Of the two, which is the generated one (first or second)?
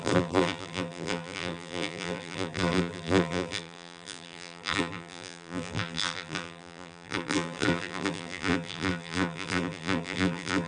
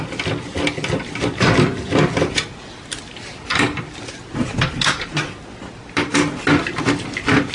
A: first